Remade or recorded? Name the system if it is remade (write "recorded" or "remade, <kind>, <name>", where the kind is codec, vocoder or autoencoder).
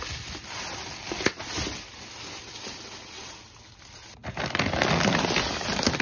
recorded